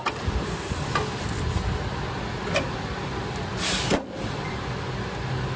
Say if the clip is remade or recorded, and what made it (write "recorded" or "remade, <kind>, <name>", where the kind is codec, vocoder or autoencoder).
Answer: recorded